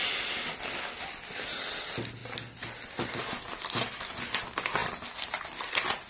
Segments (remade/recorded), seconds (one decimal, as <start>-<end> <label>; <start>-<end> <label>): 0.0-6.1 recorded